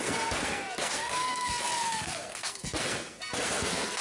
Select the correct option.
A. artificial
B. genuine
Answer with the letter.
A